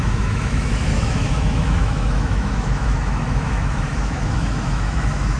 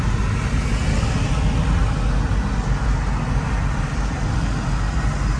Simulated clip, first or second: first